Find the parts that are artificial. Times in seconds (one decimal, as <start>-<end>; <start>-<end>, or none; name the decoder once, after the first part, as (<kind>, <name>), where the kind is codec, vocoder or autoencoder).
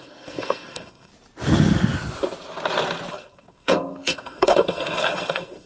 0.0-1.1 (codec, SNAC); 3.1-5.7